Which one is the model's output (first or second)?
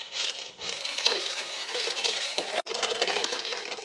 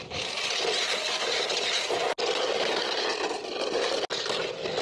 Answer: first